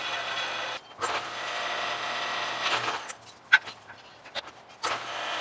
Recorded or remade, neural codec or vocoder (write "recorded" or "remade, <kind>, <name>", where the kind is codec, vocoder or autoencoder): recorded